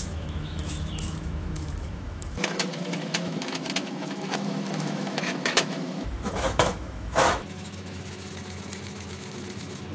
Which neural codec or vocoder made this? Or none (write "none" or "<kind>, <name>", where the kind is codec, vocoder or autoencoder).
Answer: autoencoder, DAC-VAE